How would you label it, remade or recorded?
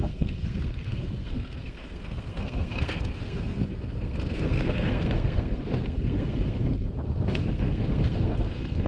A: remade